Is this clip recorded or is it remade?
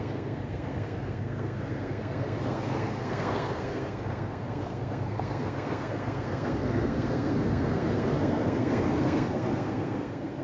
remade